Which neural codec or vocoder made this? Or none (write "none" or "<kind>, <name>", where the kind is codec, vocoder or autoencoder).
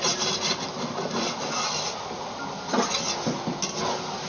none